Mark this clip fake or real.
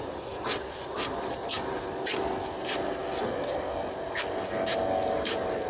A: real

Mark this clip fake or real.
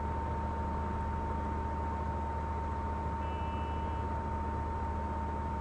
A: real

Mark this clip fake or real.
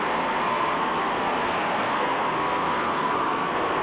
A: fake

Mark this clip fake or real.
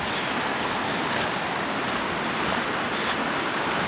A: real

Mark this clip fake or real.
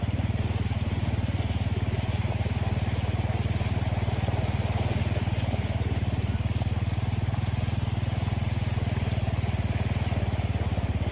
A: real